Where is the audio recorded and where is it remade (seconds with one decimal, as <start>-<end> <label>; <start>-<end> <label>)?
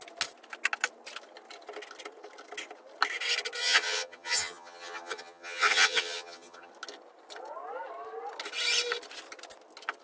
0.0-3.6 recorded; 3.6-6.7 remade; 6.7-10.0 recorded